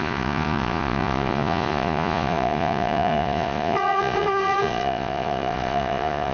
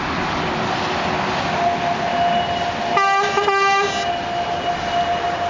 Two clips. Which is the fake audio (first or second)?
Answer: first